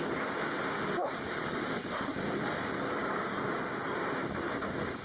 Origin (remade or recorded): recorded